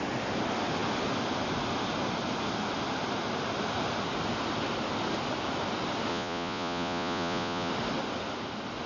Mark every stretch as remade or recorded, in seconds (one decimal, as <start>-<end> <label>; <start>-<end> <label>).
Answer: 0.0-6.1 recorded; 6.1-7.7 remade; 7.7-8.9 recorded